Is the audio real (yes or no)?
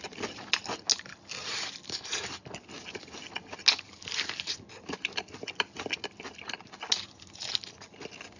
yes